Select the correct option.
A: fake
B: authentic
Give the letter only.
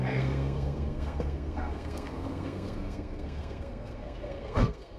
A